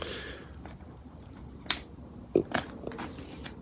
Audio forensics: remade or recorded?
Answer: recorded